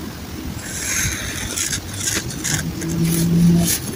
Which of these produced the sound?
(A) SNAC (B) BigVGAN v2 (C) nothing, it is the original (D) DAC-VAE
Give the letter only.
C